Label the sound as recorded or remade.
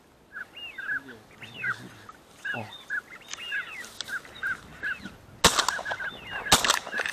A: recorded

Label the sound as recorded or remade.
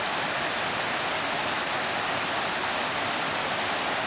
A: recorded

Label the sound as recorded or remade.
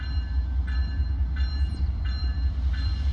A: remade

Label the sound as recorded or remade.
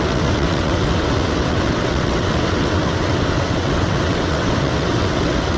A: remade